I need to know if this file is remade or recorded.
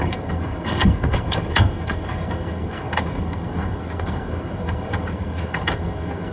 remade